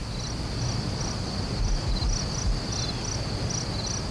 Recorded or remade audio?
recorded